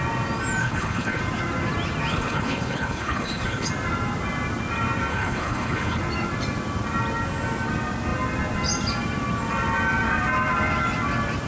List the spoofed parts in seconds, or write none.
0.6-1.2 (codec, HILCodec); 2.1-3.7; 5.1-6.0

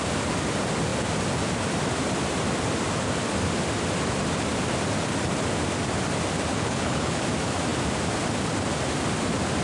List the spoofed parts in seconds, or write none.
6.5-7.2 (codec, HILCodec)

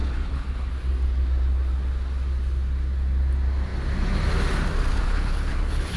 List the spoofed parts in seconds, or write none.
0.0-0.7 (codec, HILCodec); 4.9-6.0

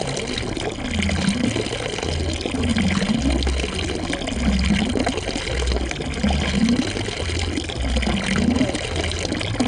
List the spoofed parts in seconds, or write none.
none

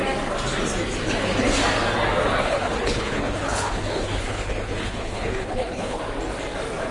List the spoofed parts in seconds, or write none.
2.4-6.0 (codec, HILCodec)

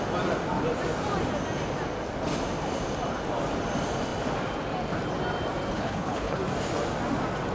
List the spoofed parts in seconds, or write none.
5.7-6.4 (codec, HILCodec)

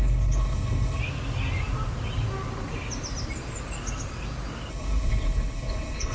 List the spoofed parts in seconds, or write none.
0.0-1.0 (codec, HILCodec); 4.7-6.1